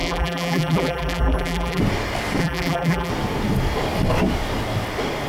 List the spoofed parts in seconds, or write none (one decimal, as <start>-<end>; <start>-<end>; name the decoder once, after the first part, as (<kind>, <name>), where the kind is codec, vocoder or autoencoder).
0.0-1.8 (vocoder, BigVGAN v2); 2.4-3.1